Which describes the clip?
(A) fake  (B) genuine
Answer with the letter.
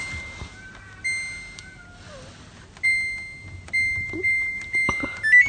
B